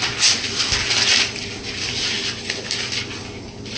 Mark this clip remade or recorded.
recorded